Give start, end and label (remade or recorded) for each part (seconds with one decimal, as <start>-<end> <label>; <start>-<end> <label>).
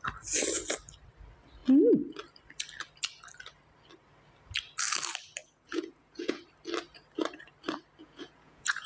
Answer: 0.0-5.4 recorded; 5.4-6.4 remade; 6.4-8.0 recorded; 8.0-8.9 remade